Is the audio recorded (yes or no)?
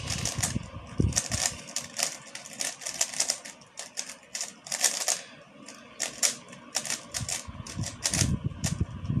yes